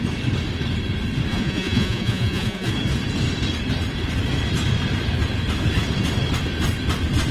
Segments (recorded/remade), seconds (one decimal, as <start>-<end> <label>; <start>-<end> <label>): 0.0-1.3 recorded; 1.3-2.7 remade; 2.7-7.3 recorded